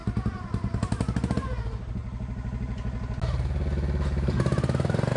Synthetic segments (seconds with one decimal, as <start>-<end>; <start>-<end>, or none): none